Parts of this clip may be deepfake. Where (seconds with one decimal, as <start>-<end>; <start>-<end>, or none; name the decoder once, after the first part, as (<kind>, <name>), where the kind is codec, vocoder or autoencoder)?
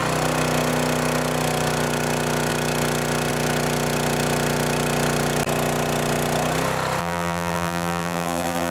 7.0-8.7 (vocoder, BigVGAN v2)